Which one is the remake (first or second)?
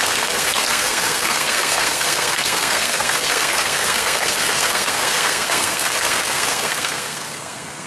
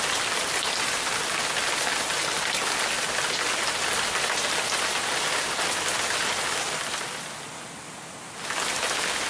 first